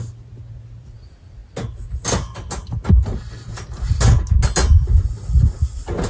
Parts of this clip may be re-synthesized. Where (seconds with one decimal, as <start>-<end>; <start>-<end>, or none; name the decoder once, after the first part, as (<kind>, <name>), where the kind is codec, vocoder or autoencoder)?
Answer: none